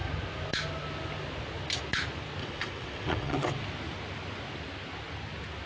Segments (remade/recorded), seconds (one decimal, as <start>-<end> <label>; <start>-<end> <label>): 0.0-2.4 recorded; 2.4-3.6 remade; 3.6-5.7 recorded